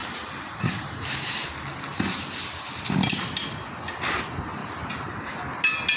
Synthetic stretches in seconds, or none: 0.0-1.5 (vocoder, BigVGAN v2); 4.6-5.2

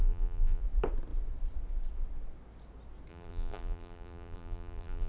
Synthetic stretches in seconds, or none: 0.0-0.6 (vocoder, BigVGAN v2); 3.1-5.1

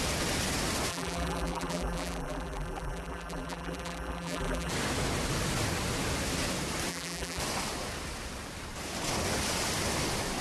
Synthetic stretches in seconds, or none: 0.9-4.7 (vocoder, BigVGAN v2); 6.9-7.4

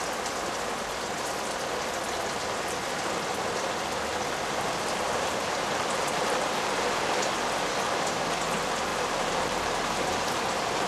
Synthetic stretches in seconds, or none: 8.9-10.3 (vocoder, BigVGAN v2)

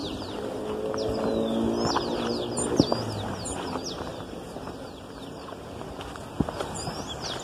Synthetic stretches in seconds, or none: 0.0-0.6 (vocoder, BigVGAN v2); 4.1-5.5